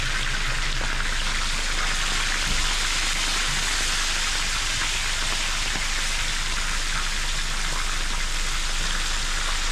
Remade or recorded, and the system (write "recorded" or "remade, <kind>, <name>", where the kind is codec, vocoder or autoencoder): recorded